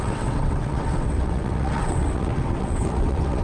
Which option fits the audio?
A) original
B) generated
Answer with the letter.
B